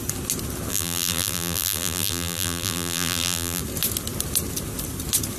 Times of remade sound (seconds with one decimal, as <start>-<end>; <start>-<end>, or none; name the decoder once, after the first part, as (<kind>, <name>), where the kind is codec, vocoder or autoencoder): 0.7-3.6 (vocoder, BigVGAN v2)